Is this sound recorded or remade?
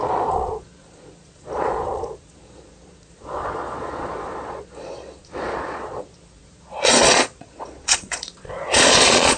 remade